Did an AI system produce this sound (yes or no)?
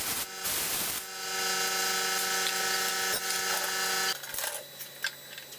no